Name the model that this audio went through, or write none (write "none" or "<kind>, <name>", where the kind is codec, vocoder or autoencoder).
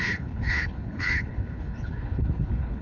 codec, HILCodec